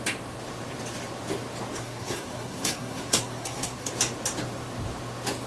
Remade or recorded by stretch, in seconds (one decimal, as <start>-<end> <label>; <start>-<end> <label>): 0.0-1.8 recorded; 1.8-3.9 remade; 3.9-5.5 recorded